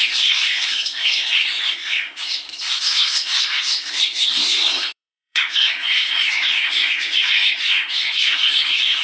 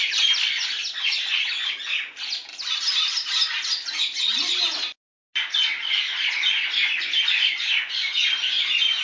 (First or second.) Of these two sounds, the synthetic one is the first